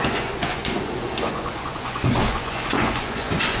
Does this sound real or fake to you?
fake